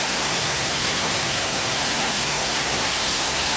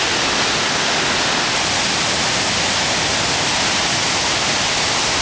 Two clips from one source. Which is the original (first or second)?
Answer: second